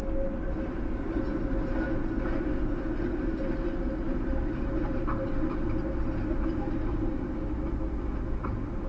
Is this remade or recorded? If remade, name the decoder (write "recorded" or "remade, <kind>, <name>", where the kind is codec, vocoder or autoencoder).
recorded